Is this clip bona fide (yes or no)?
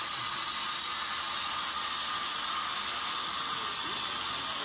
yes